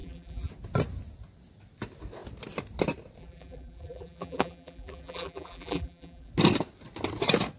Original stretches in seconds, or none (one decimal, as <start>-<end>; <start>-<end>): 0.5-3.2; 6.3-7.6